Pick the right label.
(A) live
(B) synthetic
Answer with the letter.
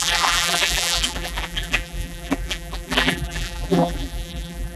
B